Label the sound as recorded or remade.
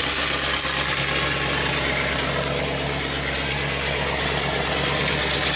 recorded